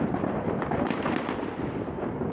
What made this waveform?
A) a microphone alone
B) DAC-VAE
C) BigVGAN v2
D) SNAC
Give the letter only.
A